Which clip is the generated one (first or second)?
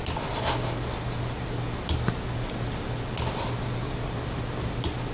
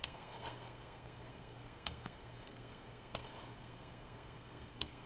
second